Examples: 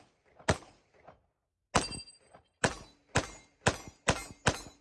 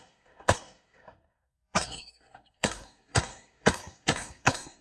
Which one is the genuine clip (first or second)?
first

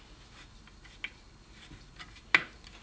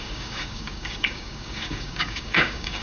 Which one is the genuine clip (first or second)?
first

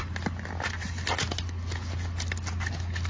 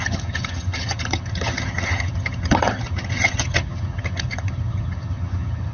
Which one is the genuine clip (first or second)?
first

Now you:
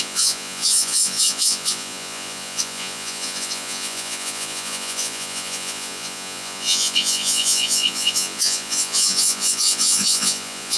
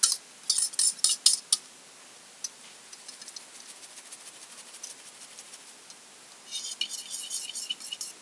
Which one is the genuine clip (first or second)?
second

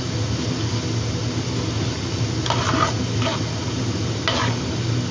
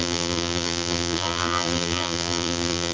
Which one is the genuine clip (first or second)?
first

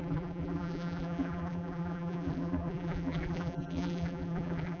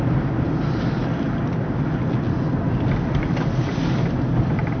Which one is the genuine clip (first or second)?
second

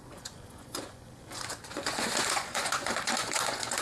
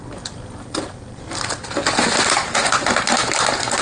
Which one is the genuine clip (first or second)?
second